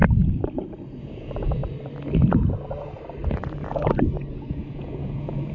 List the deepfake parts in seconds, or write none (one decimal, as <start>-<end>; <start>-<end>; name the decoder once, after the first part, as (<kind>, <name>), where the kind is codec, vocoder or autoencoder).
1.0-1.6 (vocoder, Vocos); 3.3-3.8; 4.3-5.5